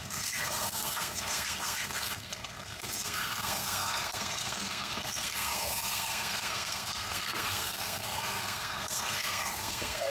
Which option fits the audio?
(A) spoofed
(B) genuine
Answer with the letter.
A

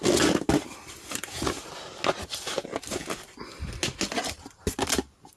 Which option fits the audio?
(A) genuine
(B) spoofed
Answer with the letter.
A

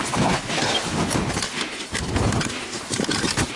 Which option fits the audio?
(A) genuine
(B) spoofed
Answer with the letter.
A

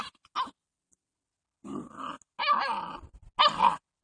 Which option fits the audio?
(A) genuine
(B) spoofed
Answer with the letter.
A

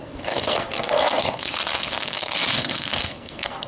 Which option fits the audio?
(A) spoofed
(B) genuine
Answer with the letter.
A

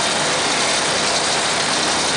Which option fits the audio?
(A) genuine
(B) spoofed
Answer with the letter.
A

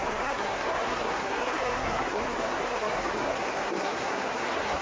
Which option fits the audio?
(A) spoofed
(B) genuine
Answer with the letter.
A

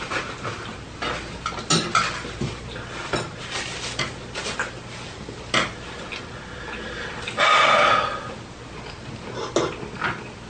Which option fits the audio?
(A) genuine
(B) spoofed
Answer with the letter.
A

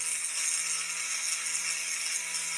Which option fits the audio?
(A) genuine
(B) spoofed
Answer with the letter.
A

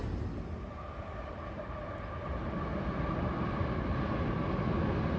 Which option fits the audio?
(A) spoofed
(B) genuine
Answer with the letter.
B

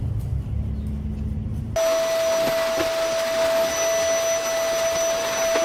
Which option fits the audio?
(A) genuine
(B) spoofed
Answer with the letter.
A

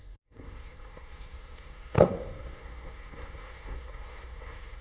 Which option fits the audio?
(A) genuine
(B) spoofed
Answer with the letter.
B